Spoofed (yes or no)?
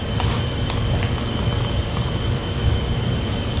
yes